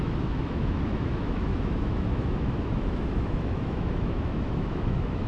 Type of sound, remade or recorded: remade